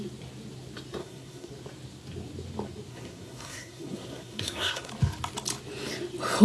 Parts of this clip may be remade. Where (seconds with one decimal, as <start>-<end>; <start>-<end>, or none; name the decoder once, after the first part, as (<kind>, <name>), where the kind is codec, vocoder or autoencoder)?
1.0-1.5 (codec, SNAC); 2.9-4.9

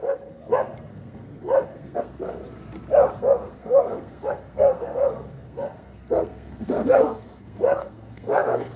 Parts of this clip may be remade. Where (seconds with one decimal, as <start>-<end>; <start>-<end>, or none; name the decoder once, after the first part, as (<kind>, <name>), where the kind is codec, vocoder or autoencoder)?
0.0-2.4 (codec, SNAC); 3.1-8.8

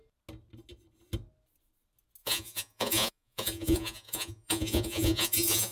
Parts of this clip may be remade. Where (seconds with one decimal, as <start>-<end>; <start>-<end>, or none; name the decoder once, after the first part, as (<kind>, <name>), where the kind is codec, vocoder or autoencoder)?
2.2-5.7 (vocoder, Vocos)

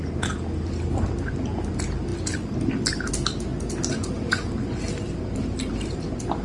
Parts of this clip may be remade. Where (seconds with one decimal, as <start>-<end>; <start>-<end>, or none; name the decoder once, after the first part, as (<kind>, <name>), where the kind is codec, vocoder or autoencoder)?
none

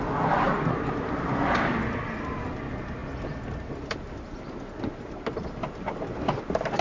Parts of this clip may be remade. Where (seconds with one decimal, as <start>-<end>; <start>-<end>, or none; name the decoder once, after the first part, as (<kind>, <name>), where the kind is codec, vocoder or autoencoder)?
none